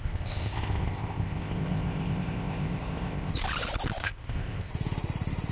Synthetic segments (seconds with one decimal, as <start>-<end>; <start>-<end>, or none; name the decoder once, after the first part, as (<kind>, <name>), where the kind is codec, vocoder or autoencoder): 0.0-3.3 (codec, ZipCodec); 4.0-4.7